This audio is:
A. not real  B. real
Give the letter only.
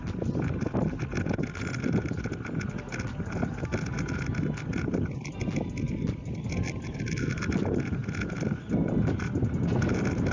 B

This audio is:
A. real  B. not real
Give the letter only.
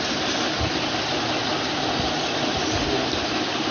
A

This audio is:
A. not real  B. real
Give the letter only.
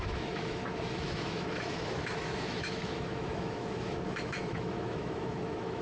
A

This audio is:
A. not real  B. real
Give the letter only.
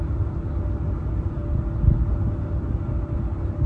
B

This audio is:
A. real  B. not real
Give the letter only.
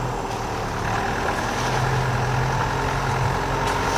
A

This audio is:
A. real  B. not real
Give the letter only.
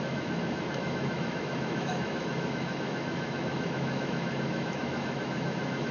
B